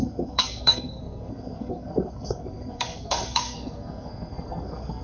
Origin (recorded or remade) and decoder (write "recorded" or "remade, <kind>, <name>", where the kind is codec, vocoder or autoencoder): remade, codec, SNAC